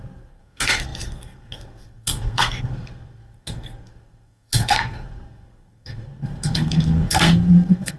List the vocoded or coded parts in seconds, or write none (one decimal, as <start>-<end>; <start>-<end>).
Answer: 0.0-8.0